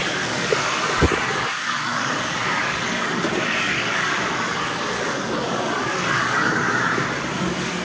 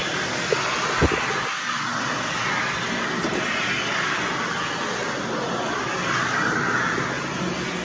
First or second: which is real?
second